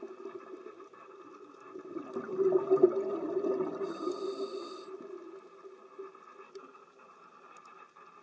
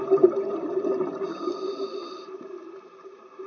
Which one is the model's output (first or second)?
second